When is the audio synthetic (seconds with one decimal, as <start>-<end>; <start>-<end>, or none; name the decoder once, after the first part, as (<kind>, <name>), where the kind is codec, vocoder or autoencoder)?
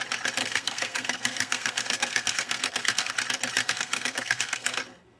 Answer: 0.4-3.1 (codec, SNAC); 3.6-4.8